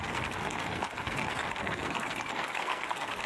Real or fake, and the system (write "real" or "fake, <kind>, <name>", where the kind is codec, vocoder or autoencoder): fake, codec, SNAC